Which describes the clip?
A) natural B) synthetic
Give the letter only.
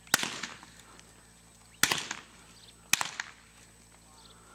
A